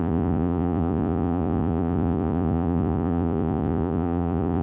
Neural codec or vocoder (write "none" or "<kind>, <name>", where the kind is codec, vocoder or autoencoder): vocoder, Vocos